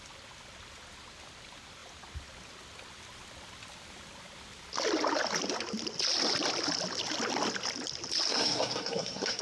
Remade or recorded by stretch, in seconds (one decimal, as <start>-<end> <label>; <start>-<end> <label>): 0.0-8.3 recorded; 8.3-9.4 remade